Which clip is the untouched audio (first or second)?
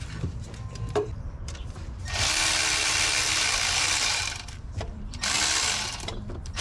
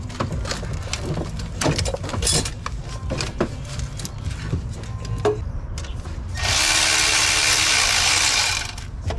second